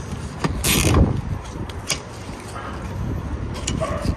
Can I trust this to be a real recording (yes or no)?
yes